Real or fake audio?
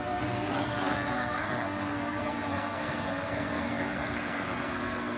fake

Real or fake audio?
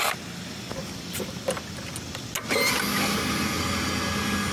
real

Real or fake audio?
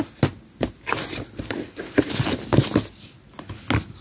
real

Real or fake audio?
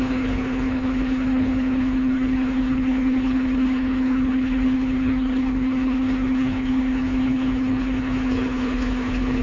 fake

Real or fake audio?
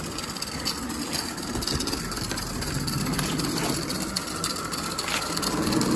real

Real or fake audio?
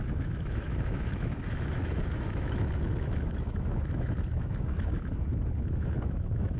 fake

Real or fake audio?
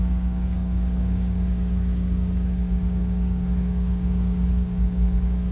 fake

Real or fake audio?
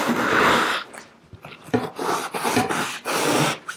real